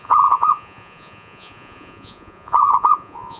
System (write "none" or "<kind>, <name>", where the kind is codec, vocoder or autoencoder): vocoder, Vocos